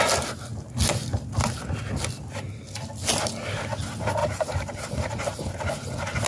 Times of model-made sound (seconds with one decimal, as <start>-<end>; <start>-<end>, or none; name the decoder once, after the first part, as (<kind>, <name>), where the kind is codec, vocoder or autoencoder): 4.2-4.9 (vocoder, BigVGAN v2)